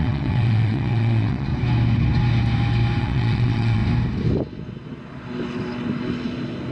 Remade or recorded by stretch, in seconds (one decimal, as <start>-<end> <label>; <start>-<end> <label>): 0.0-1.5 remade; 1.5-3.0 recorded; 3.0-3.8 remade; 3.8-6.7 recorded